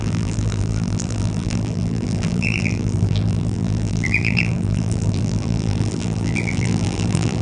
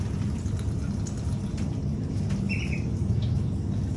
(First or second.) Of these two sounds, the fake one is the first